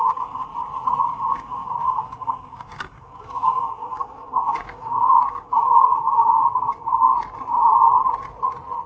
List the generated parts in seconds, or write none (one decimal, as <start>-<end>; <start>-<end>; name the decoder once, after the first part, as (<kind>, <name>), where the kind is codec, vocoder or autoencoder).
0.0-0.5 (codec, DAC); 1.0-7.1